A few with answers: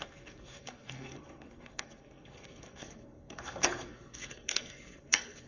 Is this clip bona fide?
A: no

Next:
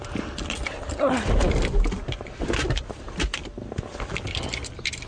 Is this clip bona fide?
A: yes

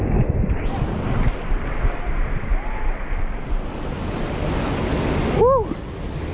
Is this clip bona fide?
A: yes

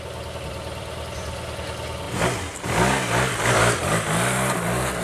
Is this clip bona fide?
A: yes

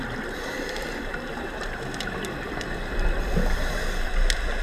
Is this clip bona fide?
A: yes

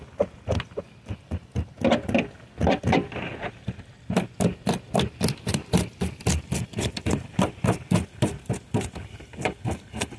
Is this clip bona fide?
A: yes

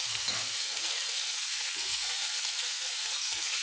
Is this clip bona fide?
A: no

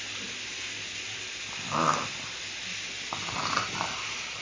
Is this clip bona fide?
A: yes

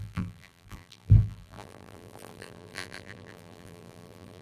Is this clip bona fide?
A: no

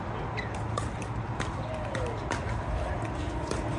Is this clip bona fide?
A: yes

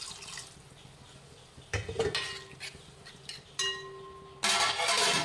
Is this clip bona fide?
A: yes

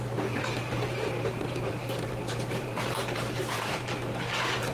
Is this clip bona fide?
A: no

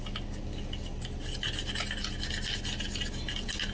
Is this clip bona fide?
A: yes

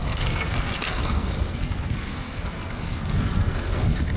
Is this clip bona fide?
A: no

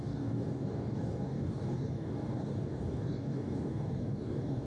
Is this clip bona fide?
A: no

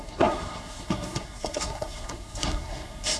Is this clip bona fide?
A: no